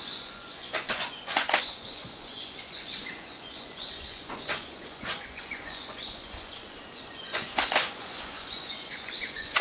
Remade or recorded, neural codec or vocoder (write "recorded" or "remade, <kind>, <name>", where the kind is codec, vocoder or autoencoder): remade, vocoder, Vocos